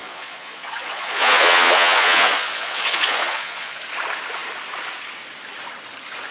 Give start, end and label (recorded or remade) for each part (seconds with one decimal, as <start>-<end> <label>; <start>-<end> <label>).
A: 0.0-3.8 remade; 3.8-6.3 recorded